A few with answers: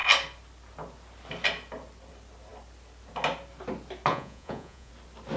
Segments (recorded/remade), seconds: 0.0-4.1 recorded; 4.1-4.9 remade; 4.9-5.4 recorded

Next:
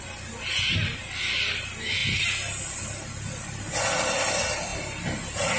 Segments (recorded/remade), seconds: 0.0-5.6 recorded

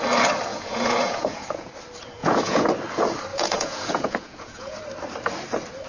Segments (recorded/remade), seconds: 0.0-0.5 recorded; 0.5-1.7 remade; 1.7-2.2 recorded; 2.2-2.7 remade; 2.7-3.3 recorded; 3.3-4.8 remade; 4.8-5.9 recorded

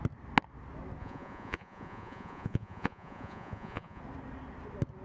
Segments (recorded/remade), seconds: 0.0-1.0 recorded; 1.0-4.0 remade; 4.0-5.0 recorded

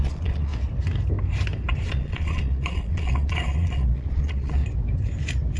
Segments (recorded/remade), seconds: 0.0-0.5 remade; 0.5-1.9 recorded; 1.9-4.6 remade; 4.6-5.6 recorded

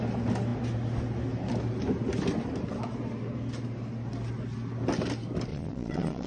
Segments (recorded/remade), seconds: 0.0-5.5 recorded; 5.5-6.3 remade

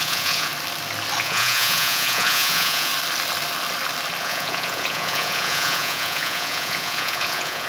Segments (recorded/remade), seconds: 0.0-0.5 remade; 0.5-1.2 recorded; 1.2-2.9 remade; 2.9-4.2 recorded; 4.2-7.7 remade